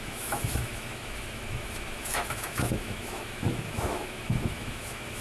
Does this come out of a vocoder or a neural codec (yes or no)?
yes